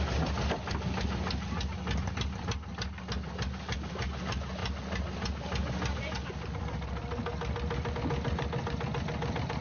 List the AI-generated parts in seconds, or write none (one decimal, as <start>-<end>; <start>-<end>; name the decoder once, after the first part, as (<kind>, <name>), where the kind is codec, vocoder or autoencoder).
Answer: none